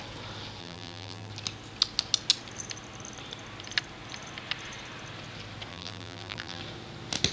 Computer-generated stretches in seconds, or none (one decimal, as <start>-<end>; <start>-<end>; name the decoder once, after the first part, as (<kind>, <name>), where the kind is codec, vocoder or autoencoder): 0.6-1.3 (vocoder, BigVGAN v2); 5.7-6.6